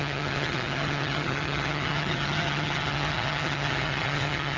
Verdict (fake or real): fake